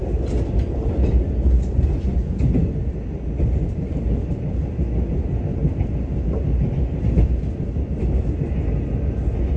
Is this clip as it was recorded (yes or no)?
yes